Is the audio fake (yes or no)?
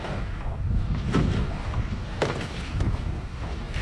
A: yes